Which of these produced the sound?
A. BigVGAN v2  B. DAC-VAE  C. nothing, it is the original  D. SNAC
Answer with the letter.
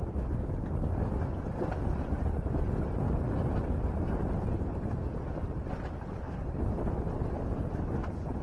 C